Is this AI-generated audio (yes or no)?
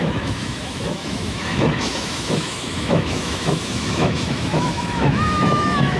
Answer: yes